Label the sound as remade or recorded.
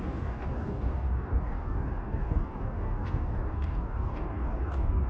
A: remade